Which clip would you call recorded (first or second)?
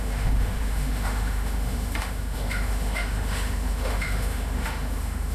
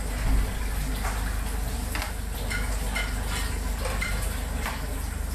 second